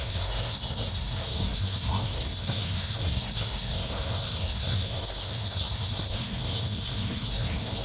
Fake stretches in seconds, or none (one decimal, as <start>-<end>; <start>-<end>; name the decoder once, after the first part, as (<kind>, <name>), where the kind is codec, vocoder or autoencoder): 0.0-7.8 (codec, SNAC)